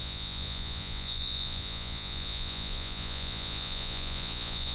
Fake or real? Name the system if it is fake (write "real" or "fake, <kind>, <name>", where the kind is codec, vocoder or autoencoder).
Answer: fake, vocoder, Vocos